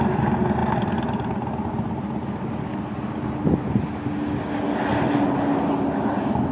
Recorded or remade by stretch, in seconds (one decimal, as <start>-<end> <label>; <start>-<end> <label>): 0.0-6.5 recorded